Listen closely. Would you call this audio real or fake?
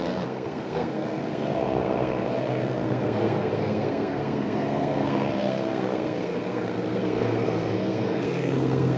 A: fake